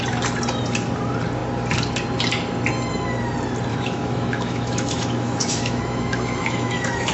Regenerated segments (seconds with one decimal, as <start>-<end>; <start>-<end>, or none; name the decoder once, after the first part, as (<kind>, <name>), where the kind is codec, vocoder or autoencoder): 3.7-7.1 (autoencoder, DAC-VAE)